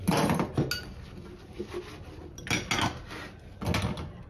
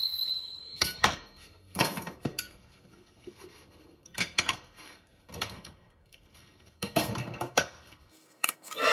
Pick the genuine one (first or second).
first